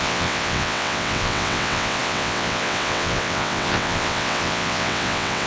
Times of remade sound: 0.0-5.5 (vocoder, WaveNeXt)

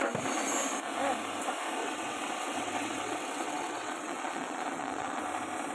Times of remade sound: 1.8-5.2 (vocoder, WaveNeXt)